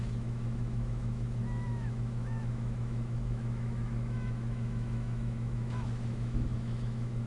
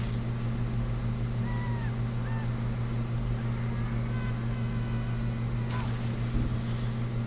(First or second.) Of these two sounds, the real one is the second